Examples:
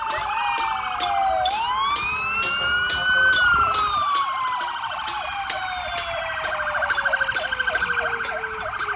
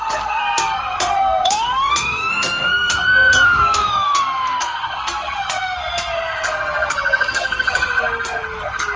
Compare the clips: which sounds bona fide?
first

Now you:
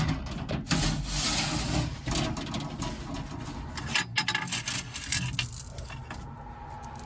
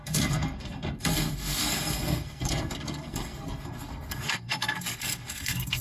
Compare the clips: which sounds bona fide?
first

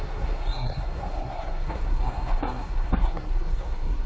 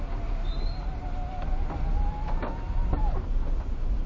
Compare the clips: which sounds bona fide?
second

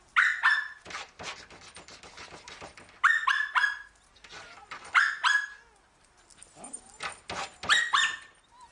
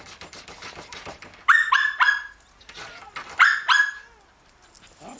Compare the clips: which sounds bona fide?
first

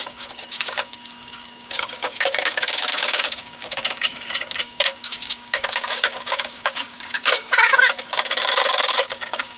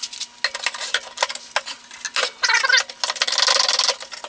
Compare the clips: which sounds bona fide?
second